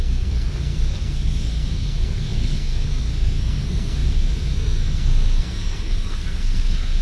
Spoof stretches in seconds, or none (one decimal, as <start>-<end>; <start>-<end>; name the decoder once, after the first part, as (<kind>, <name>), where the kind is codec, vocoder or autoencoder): 0.0-7.0 (codec, SNAC)